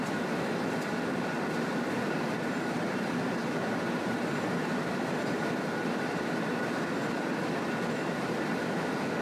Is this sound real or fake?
real